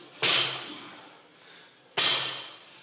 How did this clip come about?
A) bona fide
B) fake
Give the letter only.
A